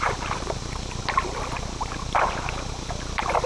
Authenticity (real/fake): real